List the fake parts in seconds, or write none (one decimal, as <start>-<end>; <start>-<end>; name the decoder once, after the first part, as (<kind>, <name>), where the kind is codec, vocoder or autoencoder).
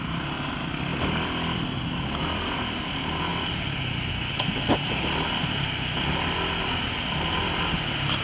none